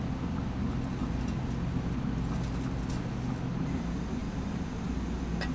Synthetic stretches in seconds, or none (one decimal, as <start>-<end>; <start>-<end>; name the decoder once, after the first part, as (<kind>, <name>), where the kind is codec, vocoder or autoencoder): 4.2-4.7 (vocoder, BigVGAN v2)